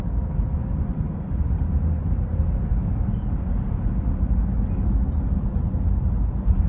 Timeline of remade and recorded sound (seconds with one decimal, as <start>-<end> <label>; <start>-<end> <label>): 0.0-2.7 recorded; 2.7-3.3 remade; 3.3-6.7 recorded